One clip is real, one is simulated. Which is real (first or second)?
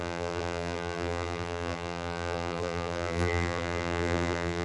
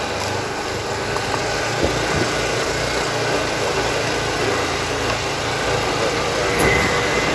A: second